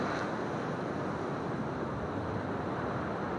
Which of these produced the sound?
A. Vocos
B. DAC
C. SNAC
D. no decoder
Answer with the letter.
D